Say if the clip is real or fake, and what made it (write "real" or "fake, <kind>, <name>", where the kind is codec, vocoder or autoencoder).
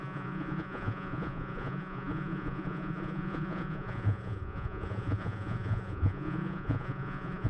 fake, vocoder, Vocos